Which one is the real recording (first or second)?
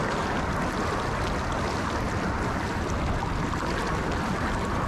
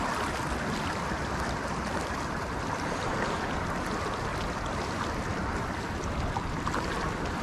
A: first